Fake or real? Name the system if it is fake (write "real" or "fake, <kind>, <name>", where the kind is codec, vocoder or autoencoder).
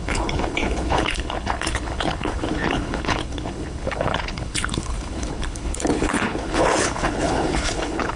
fake, codec, HILCodec